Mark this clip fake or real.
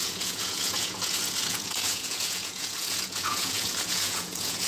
fake